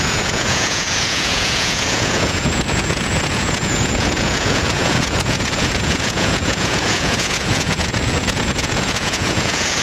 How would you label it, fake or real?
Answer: fake